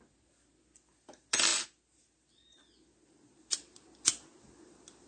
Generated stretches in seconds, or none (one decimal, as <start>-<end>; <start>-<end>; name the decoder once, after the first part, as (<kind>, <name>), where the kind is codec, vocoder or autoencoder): none